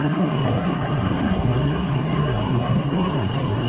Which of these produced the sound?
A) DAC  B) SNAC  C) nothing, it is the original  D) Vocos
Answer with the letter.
B